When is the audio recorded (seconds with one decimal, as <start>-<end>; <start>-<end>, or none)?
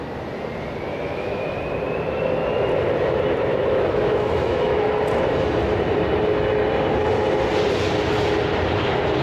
0.0-0.9; 1.6-3.5; 4.9-9.2